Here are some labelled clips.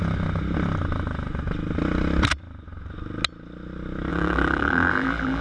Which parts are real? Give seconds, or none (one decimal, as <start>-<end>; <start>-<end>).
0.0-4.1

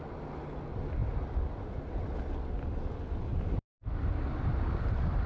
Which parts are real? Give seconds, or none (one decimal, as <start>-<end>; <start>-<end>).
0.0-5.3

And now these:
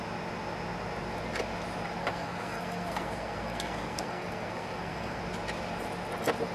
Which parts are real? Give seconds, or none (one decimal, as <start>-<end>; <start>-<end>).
0.0-2.0; 5.2-6.5

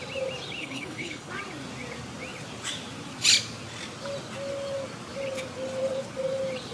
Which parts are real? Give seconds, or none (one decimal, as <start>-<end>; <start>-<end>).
0.0-0.6; 1.3-6.7

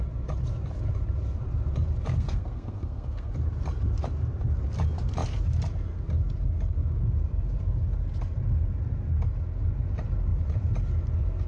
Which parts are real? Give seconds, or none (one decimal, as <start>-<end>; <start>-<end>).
0.0-2.1; 3.3-11.5

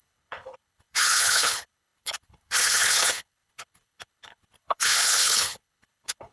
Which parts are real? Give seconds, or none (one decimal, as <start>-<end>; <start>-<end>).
none

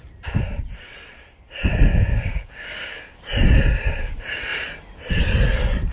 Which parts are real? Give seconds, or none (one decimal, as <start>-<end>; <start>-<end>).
0.0-1.9; 3.2-5.9

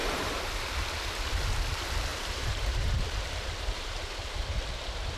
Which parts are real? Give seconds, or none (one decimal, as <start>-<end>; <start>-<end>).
0.6-2.1; 4.1-5.2